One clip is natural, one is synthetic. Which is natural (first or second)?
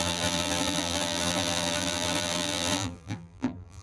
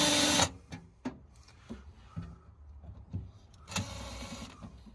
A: second